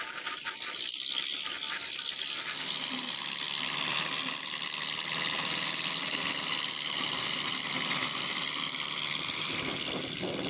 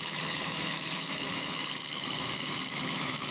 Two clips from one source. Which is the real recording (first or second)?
first